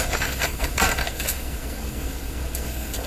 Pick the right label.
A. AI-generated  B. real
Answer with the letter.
A